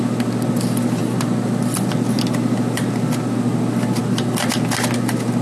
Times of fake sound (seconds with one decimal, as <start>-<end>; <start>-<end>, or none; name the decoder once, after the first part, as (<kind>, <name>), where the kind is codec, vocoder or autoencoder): 1.0-1.9 (vocoder, BigVGAN v2); 4.0-4.5